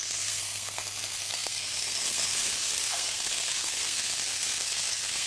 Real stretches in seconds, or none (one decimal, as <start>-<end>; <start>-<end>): none